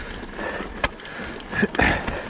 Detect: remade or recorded recorded